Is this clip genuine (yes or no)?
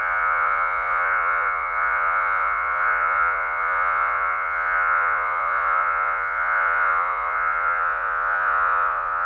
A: no